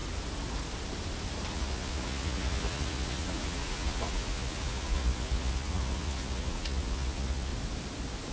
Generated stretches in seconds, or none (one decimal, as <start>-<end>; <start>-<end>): 1.5-7.5